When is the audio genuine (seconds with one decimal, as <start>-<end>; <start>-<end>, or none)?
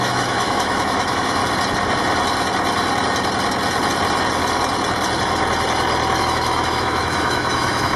1.4-6.2